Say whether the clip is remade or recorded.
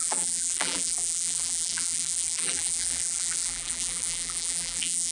remade